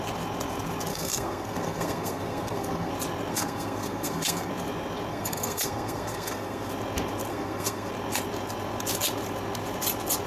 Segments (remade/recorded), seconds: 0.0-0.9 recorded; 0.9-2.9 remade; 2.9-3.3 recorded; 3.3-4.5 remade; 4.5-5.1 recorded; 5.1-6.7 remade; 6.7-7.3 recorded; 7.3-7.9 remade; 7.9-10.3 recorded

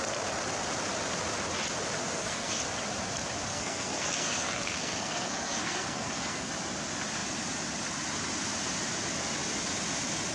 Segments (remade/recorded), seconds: 0.0-2.0 recorded; 2.0-2.6 remade; 2.6-3.5 recorded; 3.5-6.5 remade; 6.5-10.3 recorded

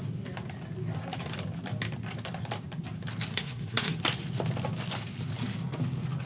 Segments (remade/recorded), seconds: 0.0-3.3 recorded; 3.3-4.0 remade; 4.0-6.3 recorded

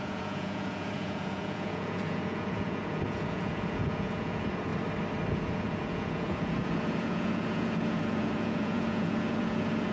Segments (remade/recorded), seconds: 0.0-4.7 remade; 4.7-5.3 recorded; 5.3-9.9 remade